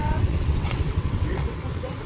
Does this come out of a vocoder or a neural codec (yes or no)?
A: yes